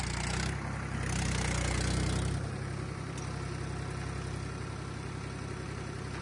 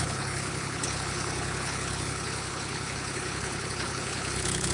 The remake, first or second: second